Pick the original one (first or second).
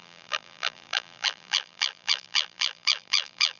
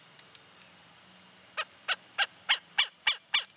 second